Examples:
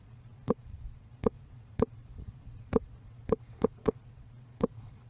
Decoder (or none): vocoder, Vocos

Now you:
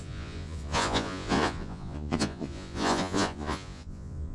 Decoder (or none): vocoder, Vocos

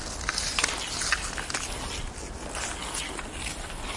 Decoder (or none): none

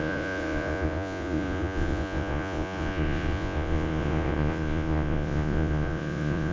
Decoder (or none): vocoder, Vocos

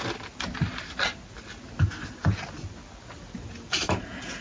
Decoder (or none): none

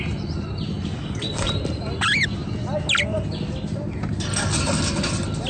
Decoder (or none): none